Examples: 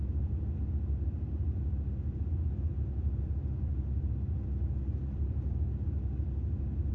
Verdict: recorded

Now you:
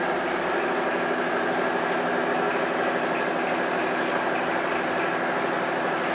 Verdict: recorded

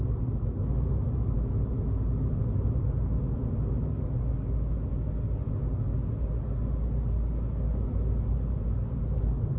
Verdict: recorded